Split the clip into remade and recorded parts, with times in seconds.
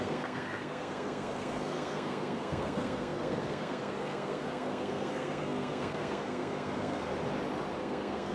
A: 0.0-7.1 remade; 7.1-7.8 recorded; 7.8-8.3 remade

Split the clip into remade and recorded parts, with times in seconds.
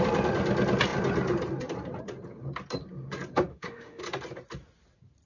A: 0.0-3.5 recorded; 3.5-4.0 remade; 4.0-5.3 recorded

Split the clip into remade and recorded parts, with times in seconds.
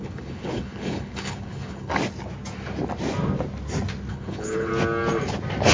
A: 0.0-1.9 remade; 1.9-4.1 recorded; 4.1-4.7 remade; 4.7-5.7 recorded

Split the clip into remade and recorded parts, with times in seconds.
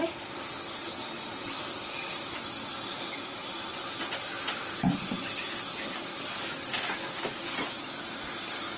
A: 0.0-8.8 recorded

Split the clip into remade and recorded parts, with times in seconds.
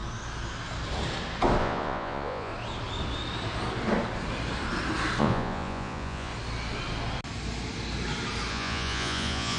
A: 0.0-1.6 recorded; 1.6-2.5 remade; 2.5-5.2 recorded; 5.2-6.3 remade; 6.3-8.5 recorded; 8.5-9.6 remade